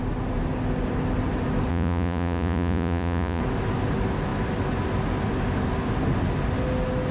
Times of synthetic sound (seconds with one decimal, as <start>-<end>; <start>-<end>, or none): 1.7-3.4